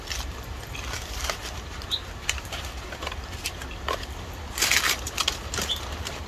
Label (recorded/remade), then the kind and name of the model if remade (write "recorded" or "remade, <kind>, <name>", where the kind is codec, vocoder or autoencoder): remade, vocoder, BigVGAN v2